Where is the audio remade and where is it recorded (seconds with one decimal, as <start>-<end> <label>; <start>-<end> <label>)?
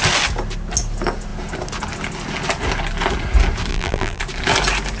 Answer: 0.0-3.7 recorded; 3.7-4.2 remade; 4.2-5.0 recorded